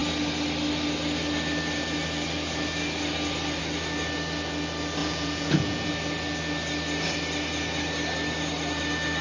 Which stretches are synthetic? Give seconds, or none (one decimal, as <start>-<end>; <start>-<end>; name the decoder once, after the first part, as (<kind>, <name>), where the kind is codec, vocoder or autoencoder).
5.0-5.9 (vocoder, Vocos)